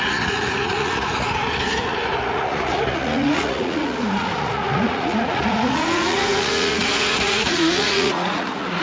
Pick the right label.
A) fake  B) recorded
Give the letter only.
A